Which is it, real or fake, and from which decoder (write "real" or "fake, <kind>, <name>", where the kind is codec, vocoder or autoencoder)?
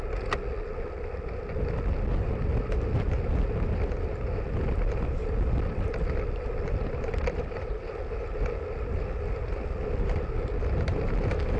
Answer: real